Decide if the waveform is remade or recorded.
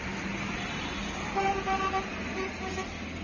recorded